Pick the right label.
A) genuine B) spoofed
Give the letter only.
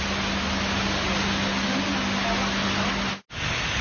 A